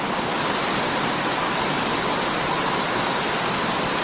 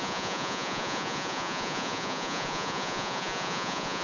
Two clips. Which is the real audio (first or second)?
first